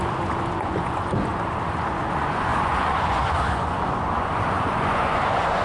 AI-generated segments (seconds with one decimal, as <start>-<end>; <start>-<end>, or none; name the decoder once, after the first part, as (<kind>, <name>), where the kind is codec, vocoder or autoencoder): 0.0-1.3 (vocoder, Vocos); 1.8-5.6